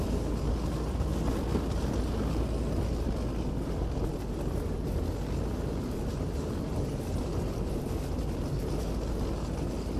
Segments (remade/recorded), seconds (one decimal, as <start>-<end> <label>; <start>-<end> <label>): 0.0-10.0 recorded